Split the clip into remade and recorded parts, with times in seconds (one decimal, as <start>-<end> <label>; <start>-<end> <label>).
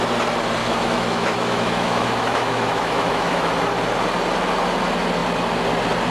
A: 0.0-0.6 recorded; 0.6-3.5 remade; 3.5-6.1 recorded